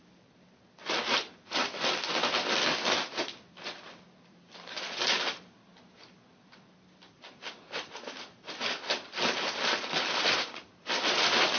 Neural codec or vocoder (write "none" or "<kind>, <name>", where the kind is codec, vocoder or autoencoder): none